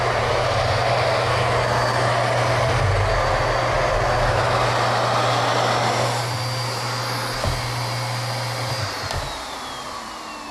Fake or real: real